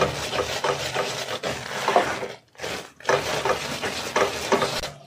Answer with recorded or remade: recorded